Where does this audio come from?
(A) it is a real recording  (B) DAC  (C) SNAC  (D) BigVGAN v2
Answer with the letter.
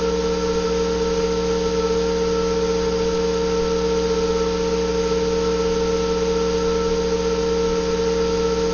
A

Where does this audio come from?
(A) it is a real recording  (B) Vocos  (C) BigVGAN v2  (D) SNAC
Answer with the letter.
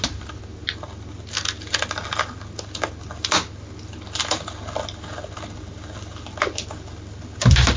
A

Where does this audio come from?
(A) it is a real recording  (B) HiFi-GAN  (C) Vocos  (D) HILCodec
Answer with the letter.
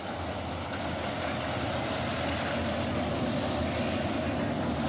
A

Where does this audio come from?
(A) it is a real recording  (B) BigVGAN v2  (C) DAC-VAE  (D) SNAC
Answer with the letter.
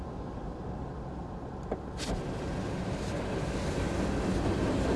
A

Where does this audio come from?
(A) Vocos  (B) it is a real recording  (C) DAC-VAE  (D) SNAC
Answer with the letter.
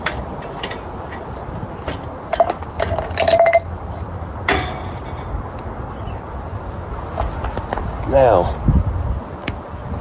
B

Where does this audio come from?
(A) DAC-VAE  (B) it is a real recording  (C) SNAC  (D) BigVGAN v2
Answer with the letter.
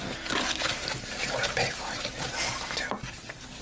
B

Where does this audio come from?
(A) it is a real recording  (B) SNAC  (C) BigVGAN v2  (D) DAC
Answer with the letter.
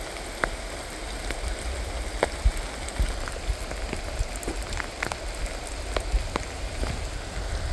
A